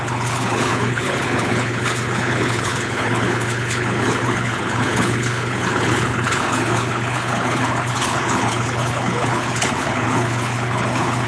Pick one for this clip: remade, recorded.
remade